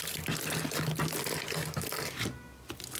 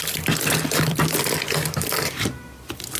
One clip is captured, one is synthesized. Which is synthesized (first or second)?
second